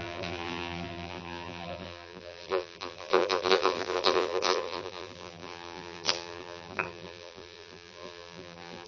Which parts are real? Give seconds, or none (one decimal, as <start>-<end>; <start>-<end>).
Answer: none